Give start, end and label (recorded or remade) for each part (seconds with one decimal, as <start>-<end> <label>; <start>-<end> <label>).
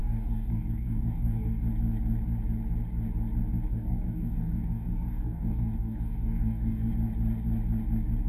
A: 0.0-1.6 remade; 1.6-3.7 recorded; 3.7-6.9 remade; 6.9-8.3 recorded